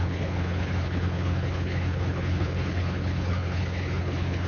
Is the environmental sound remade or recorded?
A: remade